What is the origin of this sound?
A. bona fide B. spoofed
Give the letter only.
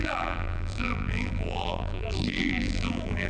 B